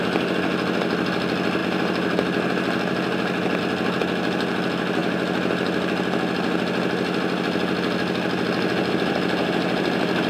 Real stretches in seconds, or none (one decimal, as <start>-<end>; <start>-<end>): 0.0-10.3

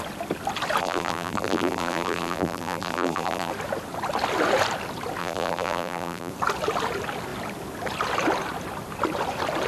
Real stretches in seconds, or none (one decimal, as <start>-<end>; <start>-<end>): 0.0-0.8; 3.5-5.2; 6.3-9.7